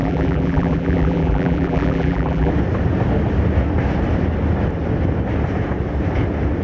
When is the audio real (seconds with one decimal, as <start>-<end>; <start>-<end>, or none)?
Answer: 2.5-6.6